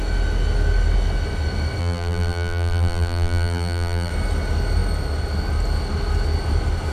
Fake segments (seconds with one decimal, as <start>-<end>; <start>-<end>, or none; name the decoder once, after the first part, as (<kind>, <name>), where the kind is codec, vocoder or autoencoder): 1.8-4.1 (vocoder, BigVGAN v2)